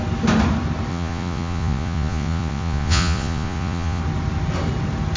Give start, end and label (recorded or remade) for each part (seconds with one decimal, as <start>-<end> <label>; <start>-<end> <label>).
0.0-0.9 recorded; 0.9-4.0 remade; 4.0-5.2 recorded